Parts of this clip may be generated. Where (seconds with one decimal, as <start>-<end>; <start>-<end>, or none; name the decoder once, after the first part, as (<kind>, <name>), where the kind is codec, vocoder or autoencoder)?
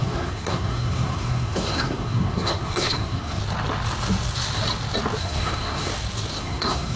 0.0-3.4 (codec, SNAC); 5.2-5.9; 6.4-7.0